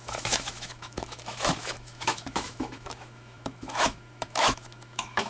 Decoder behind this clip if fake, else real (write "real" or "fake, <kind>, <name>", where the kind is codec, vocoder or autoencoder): fake, autoencoder, DAC-VAE